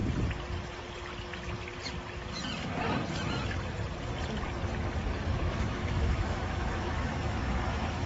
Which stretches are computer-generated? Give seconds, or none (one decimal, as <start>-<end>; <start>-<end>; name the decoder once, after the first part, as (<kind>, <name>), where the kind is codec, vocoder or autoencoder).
5.3-8.1 (autoencoder, DAC-VAE)